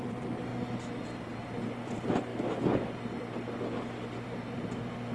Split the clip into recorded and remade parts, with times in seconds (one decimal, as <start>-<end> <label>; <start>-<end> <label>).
0.0-0.5 remade; 0.5-1.4 recorded; 1.4-2.3 remade; 2.3-3.2 recorded; 3.2-5.1 remade

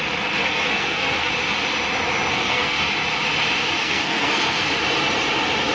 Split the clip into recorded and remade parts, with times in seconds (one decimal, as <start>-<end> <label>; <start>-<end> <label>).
0.0-0.4 recorded; 0.4-1.3 remade; 1.3-2.3 recorded; 2.3-2.8 remade; 2.8-3.8 recorded; 3.8-4.7 remade; 4.7-5.7 recorded